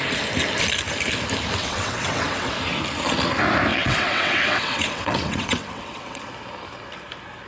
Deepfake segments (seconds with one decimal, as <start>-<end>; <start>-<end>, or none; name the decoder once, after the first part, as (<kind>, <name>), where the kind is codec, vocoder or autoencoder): 1.6-2.5 (vocoder, WaveNeXt); 3.7-6.2